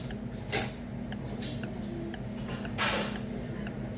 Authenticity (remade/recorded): recorded